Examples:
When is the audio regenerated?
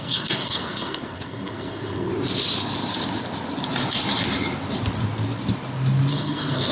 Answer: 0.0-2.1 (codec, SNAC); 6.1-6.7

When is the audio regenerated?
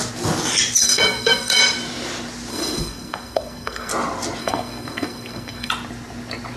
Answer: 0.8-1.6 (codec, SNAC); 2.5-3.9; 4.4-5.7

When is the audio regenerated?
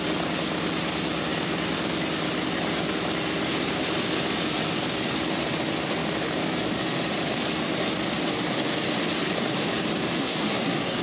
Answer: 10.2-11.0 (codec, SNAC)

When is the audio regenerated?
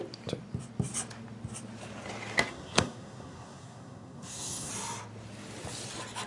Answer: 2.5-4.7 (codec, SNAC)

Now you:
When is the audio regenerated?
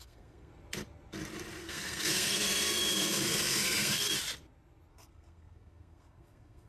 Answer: 0.0-0.5 (codec, SNAC); 1.6-4.1; 4.9-6.7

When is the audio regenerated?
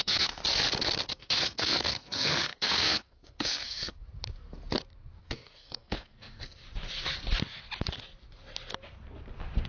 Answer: 0.0-0.4 (codec, SNAC); 1.1-4.0; 5.2-6.6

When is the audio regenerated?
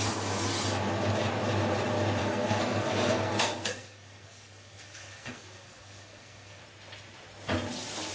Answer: 2.2-6.6 (codec, SNAC)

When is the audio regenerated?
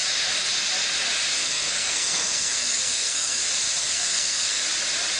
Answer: 1.4-3.4 (codec, SNAC); 3.8-4.6